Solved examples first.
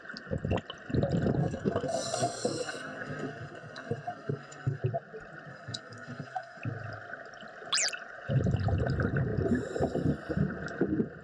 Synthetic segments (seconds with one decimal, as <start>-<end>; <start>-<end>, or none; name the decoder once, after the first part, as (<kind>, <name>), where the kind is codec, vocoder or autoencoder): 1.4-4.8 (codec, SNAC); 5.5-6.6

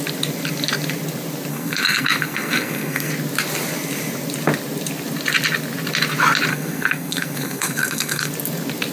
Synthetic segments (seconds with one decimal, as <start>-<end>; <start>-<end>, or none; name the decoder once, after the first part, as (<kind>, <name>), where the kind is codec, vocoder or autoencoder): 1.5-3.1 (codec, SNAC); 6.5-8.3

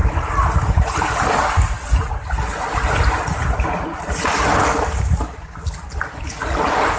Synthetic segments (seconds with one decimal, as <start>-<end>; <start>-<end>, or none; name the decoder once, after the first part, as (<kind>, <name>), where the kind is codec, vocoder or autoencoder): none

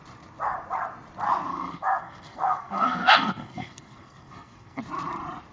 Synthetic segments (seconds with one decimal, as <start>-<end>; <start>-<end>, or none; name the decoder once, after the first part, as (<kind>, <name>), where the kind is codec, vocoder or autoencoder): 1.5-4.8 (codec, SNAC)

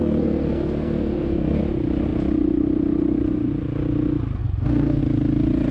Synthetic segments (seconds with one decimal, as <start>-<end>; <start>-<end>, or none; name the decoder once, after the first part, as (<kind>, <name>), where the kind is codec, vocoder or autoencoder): 0.0-1.6 (codec, SNAC); 4.4-5.0